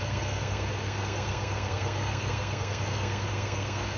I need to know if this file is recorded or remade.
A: remade